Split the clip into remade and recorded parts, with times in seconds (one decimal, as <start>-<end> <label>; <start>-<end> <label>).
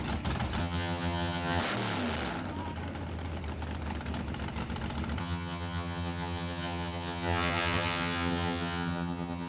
0.0-0.6 recorded; 0.6-1.6 remade; 1.6-5.2 recorded; 5.2-9.5 remade